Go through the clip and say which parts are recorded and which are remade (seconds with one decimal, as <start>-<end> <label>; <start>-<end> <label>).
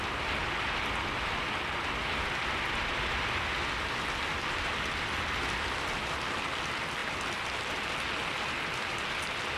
0.0-0.4 recorded; 0.4-1.0 remade; 1.0-9.6 recorded